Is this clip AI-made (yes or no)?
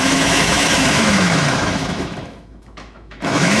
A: yes